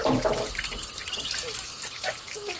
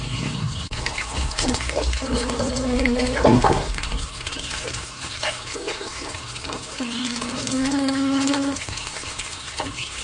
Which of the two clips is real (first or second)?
first